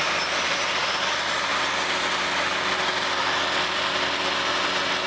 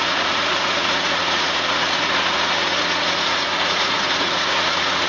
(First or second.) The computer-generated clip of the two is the second